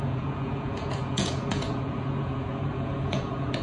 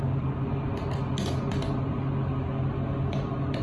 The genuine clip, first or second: second